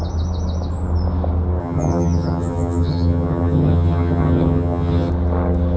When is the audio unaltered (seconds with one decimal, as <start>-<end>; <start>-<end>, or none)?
0.0-1.6; 5.1-5.8